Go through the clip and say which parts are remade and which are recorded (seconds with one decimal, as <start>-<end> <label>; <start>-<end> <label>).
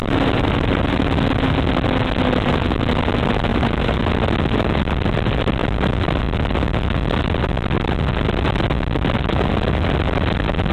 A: 0.0-1.0 remade; 1.0-3.5 recorded; 3.5-4.0 remade; 4.0-10.7 recorded